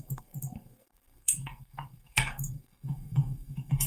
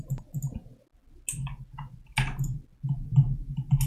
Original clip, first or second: second